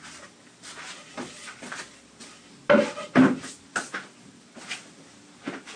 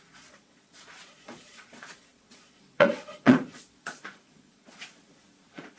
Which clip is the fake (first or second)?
second